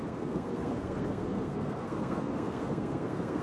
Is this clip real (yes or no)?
no